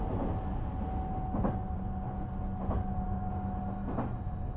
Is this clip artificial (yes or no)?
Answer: no